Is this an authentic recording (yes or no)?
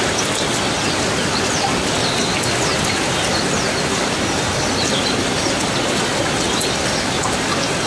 yes